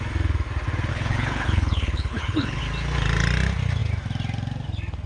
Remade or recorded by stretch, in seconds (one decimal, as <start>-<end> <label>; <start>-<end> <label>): 0.0-0.9 recorded; 0.9-2.6 remade; 2.6-5.1 recorded